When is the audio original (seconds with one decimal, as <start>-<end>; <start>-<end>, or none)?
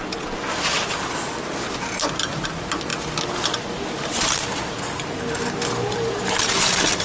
0.0-7.0